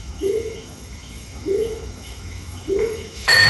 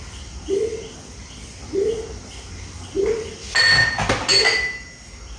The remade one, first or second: first